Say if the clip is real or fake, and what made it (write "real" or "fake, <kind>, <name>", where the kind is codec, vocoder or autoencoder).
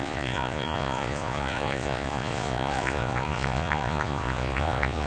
fake, vocoder, Vocos